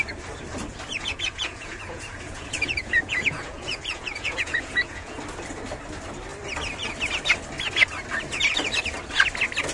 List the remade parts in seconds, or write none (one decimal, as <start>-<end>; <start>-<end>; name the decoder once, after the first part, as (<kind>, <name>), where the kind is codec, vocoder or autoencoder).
0.9-5.2 (vocoder, Vocos)

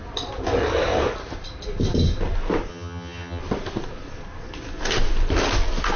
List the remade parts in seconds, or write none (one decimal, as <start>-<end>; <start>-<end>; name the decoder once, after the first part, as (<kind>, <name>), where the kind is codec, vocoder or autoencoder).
2.7-3.4 (vocoder, HiFi-GAN)

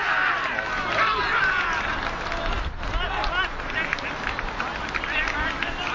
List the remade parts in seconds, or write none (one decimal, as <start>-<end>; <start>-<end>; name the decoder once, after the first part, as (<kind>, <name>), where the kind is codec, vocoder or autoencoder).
none